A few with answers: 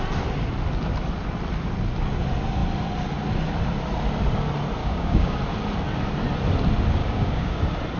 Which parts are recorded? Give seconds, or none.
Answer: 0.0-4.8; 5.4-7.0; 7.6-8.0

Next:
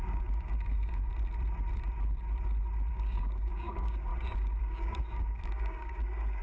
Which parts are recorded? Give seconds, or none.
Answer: 1.1-2.9; 4.1-4.6

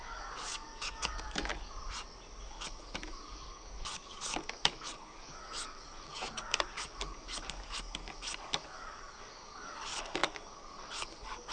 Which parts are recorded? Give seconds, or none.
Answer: 1.5-2.4

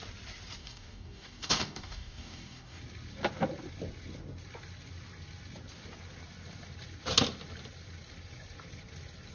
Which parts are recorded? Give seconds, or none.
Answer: 0.0-0.6; 2.8-9.3

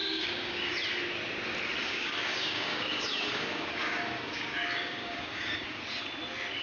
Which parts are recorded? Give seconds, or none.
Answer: 0.7-1.8; 5.8-6.6